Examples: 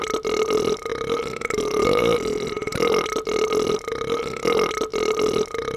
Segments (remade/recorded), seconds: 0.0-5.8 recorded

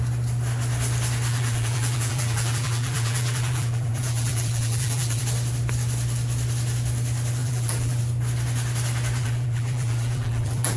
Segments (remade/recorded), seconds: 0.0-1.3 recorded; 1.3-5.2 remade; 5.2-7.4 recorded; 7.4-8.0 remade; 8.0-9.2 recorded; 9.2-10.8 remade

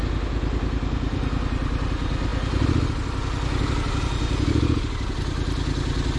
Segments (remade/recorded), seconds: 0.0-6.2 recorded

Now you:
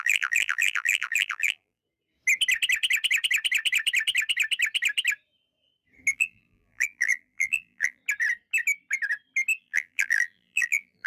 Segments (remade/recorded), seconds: 0.0-1.8 remade; 1.8-6.1 recorded; 6.1-8.0 remade; 8.0-9.6 recorded; 9.6-11.1 remade